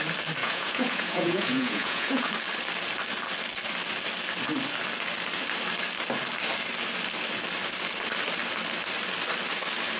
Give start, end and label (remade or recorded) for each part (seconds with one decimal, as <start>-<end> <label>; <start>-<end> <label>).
0.0-0.4 recorded; 0.4-2.3 remade; 2.3-10.0 recorded